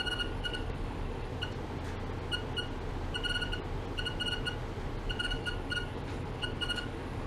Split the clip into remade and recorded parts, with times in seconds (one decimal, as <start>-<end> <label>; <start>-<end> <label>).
0.0-1.3 remade; 1.3-5.2 recorded; 5.2-7.3 remade